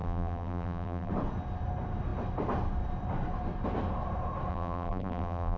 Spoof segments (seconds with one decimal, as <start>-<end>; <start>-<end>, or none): 0.0-1.1; 4.5-5.6